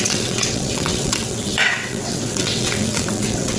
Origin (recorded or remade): remade